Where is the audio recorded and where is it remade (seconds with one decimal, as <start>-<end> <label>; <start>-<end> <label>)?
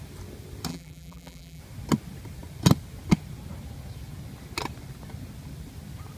0.0-0.7 recorded; 0.7-1.6 remade; 1.6-6.2 recorded